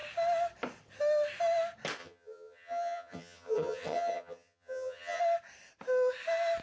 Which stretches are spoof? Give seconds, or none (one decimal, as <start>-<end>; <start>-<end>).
2.0-5.2